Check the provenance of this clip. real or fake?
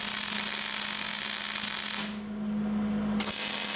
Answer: real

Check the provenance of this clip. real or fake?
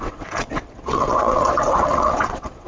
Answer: fake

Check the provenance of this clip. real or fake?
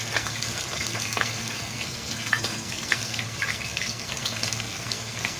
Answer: fake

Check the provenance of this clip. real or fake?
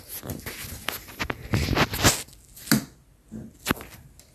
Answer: real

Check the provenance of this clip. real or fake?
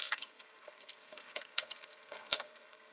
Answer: fake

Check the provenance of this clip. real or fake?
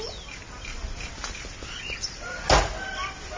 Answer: real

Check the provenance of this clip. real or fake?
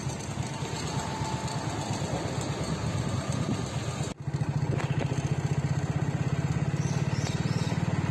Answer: real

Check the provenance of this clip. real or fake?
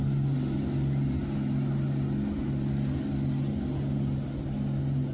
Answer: real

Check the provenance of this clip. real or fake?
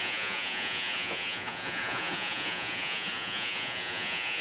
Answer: fake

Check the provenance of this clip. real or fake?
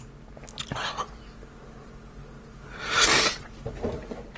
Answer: real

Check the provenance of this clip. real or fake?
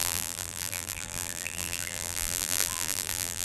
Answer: fake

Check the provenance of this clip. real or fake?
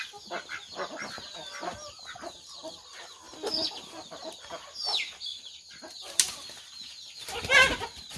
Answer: real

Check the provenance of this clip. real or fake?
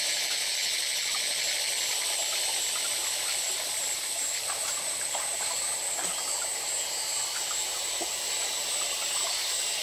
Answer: fake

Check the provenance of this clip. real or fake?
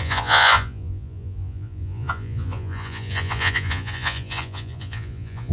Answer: fake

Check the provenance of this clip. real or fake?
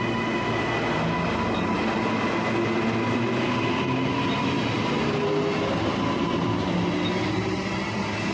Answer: real